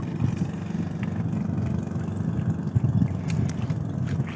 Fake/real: real